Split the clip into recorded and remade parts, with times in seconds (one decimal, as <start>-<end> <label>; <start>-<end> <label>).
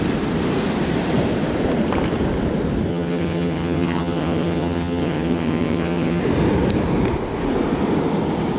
0.0-2.9 recorded; 2.9-6.2 remade; 6.2-8.6 recorded